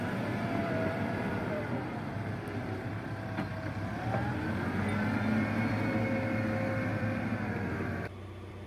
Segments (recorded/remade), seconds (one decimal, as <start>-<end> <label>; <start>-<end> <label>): 0.0-0.6 recorded; 0.6-2.1 remade; 2.1-6.9 recorded; 6.9-8.7 remade